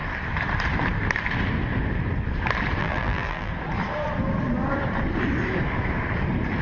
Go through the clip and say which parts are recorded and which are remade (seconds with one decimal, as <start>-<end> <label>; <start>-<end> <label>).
0.0-2.8 recorded; 2.8-3.5 remade; 3.5-6.6 recorded